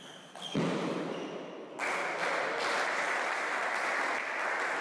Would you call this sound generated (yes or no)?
no